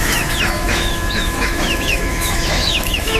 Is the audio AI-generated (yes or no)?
yes